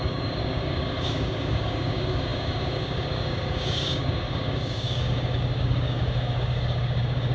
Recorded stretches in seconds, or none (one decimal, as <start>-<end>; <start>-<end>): none